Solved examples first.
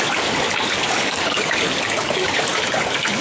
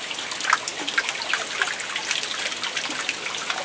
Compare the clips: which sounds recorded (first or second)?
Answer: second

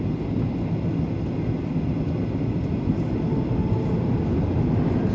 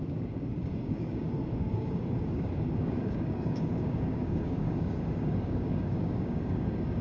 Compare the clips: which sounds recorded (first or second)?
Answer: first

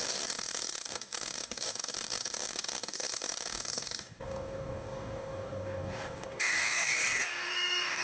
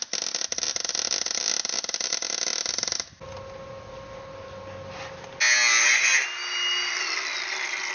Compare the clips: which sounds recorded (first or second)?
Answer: second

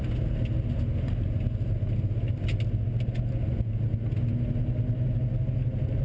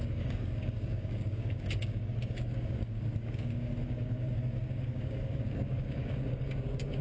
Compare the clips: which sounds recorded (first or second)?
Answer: first